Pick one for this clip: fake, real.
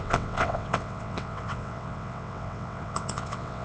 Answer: fake